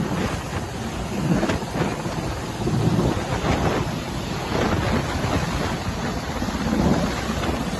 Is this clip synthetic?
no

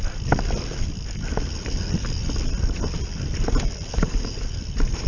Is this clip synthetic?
no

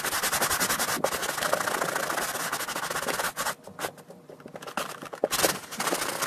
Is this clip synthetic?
no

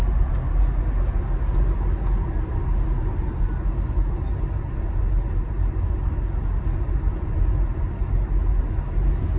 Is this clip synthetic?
no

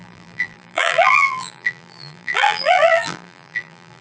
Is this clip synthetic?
yes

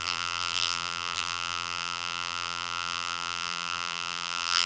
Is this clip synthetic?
yes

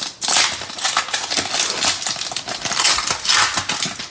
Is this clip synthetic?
no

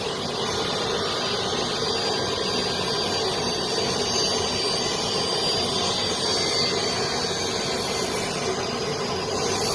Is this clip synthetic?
no